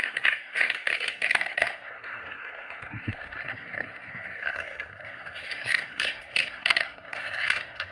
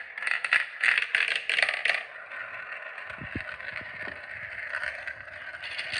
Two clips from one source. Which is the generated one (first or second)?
first